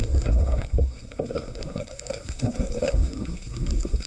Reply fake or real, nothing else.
fake